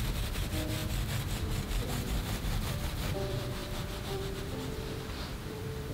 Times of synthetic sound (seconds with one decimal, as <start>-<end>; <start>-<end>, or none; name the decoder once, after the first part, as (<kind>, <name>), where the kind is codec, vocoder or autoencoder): 0.0-0.8 (vocoder, BigVGAN v2); 1.4-5.9